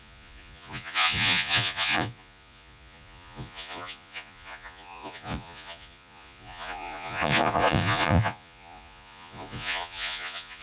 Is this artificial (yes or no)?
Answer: yes